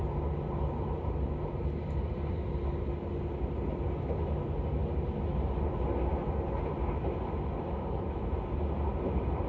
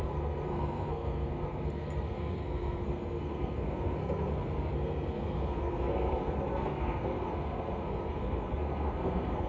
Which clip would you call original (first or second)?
first